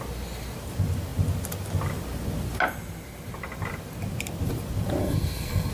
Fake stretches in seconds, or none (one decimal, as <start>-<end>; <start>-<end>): 5.0-5.7